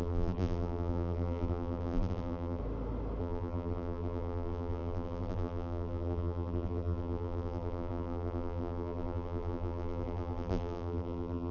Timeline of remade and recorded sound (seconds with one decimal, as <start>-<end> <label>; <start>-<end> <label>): 0.0-2.6 remade; 2.6-3.2 recorded; 3.2-11.5 remade